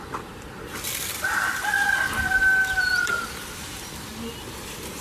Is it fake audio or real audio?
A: fake